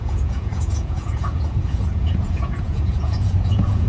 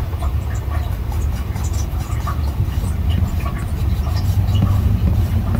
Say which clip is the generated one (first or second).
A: first